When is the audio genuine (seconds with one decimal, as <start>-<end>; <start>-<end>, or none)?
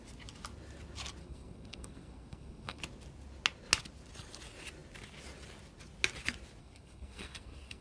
0.0-1.2; 2.8-6.6